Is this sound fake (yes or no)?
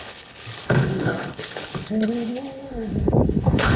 yes